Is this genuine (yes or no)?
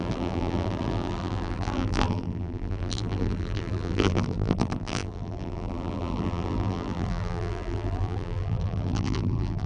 no